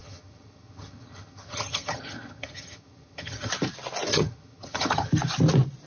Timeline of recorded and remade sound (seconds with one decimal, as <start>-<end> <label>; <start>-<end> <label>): 0.0-3.5 remade; 3.5-4.1 recorded; 4.1-5.1 remade; 5.1-5.9 recorded